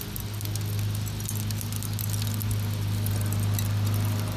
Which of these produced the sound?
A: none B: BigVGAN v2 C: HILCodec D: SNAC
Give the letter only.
A